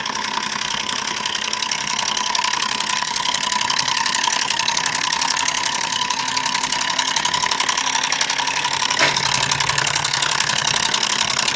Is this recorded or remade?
remade